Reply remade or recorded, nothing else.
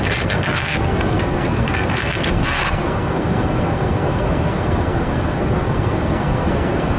remade